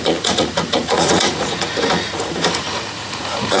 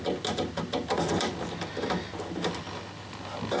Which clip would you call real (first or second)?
second